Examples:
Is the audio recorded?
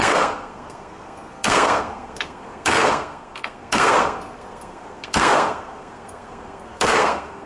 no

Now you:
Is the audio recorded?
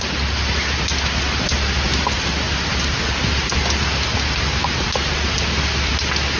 yes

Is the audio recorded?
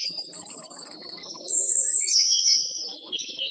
no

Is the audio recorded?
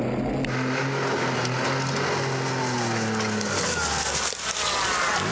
yes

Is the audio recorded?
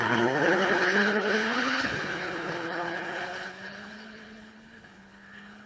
no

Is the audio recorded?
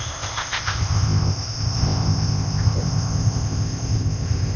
no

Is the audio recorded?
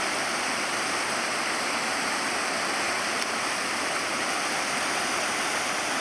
yes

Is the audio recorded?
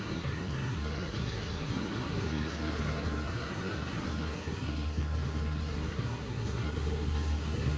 no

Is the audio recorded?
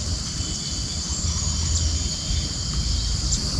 yes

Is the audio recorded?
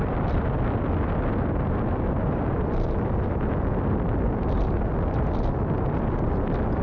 no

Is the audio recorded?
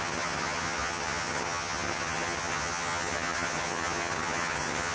no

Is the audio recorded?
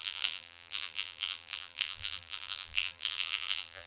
no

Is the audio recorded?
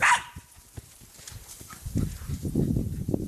yes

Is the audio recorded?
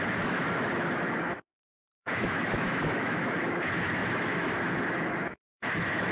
no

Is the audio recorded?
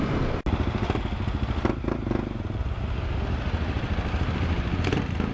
yes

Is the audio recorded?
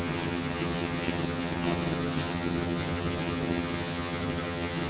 no